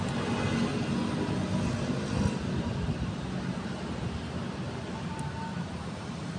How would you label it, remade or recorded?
recorded